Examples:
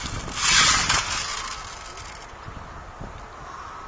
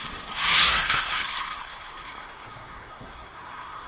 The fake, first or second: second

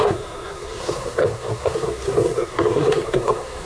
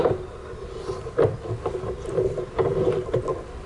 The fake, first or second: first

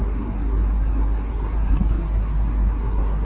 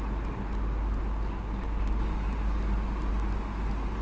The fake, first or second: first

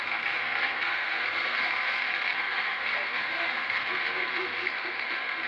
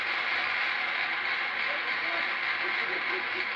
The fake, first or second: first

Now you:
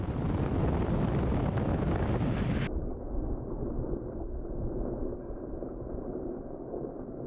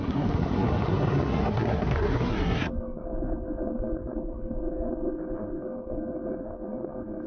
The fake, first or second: second